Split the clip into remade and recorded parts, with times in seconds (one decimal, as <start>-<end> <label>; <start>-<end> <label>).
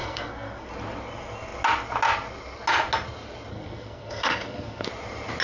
0.0-0.7 remade; 0.7-3.5 recorded; 3.5-4.9 remade; 4.9-5.4 recorded